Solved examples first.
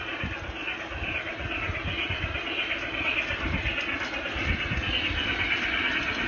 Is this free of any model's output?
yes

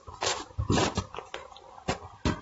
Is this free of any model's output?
no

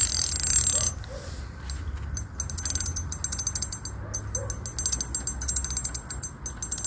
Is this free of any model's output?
yes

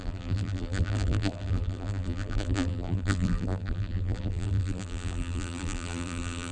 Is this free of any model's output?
no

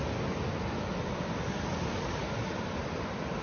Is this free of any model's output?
yes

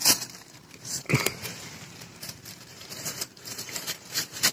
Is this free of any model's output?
no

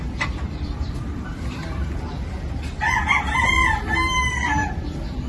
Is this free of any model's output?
no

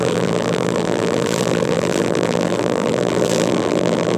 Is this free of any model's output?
no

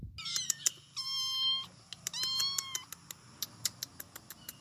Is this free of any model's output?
yes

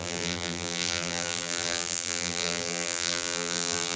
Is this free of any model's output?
no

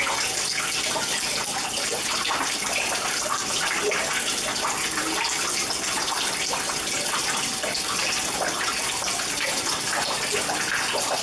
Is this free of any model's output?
yes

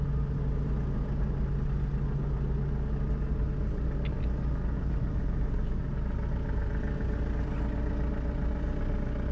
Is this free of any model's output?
yes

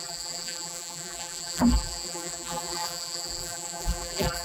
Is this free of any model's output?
no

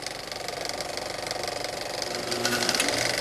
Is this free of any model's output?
yes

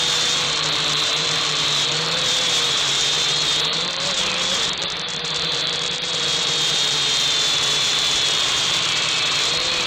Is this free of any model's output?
no